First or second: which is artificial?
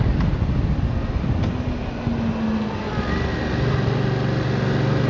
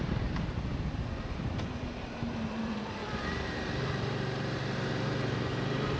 second